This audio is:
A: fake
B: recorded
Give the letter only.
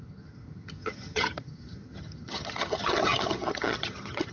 A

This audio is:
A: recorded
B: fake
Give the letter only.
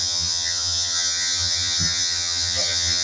B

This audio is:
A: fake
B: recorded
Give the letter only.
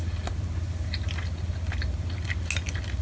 B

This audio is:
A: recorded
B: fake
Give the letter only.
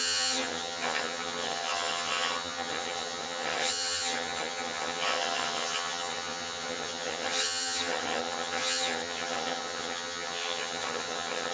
B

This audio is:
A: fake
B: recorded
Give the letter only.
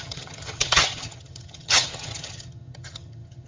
A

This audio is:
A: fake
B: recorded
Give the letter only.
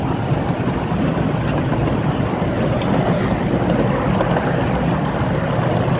B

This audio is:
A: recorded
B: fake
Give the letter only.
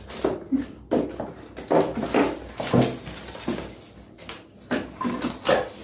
A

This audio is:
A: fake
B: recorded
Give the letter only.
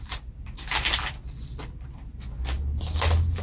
B